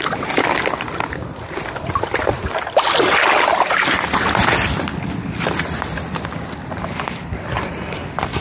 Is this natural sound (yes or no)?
no